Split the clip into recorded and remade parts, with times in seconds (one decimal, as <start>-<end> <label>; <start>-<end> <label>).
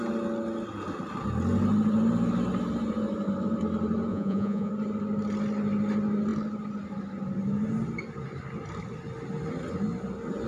0.0-4.1 recorded; 4.1-4.7 remade; 4.7-10.5 recorded